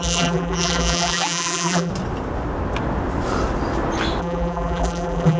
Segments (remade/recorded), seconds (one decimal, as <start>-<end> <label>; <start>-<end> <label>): 0.0-1.9 remade; 1.9-4.2 recorded; 4.2-5.4 remade